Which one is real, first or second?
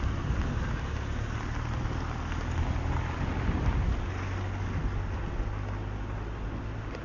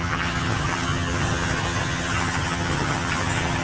first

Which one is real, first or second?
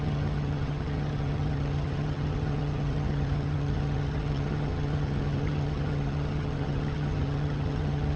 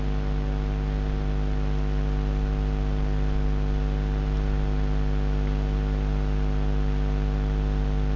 second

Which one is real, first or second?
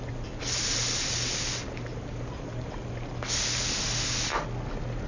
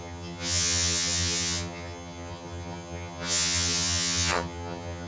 first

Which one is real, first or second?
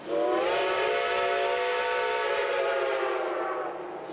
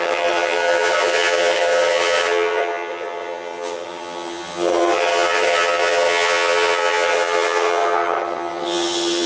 first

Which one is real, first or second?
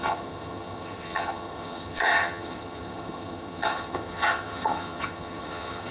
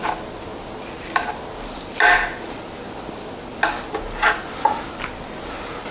second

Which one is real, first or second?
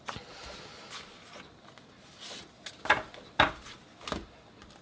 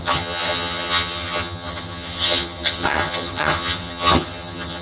first